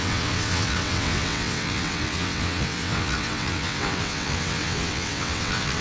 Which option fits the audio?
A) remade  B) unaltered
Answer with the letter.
A